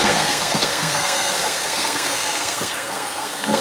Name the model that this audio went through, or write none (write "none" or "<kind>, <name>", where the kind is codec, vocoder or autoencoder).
codec, SNAC